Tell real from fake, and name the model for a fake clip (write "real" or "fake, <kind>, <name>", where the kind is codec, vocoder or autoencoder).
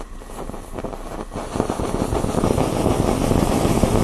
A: real